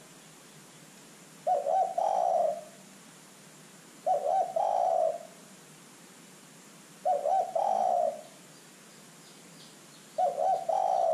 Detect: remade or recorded recorded